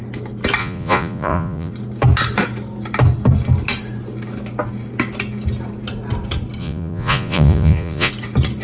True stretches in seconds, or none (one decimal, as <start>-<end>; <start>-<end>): 0.0-0.6; 1.7-6.6; 8.1-8.6